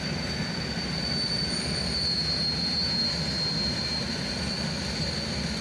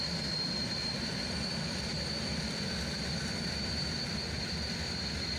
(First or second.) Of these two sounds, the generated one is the second